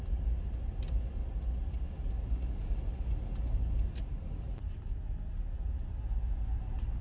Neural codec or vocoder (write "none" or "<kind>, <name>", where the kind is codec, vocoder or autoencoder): none